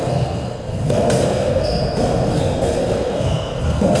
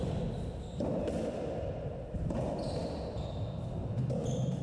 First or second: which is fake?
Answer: first